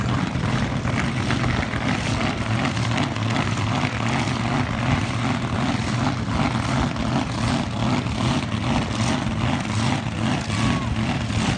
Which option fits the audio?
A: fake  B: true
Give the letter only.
B